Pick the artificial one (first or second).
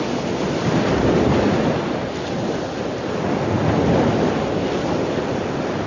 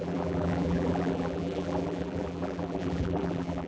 second